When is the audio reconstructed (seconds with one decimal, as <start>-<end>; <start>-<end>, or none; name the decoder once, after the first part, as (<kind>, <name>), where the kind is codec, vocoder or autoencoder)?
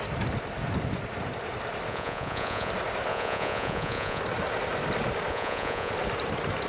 1.9-2.7 (vocoder, Vocos); 3.1-4.2; 5.3-5.9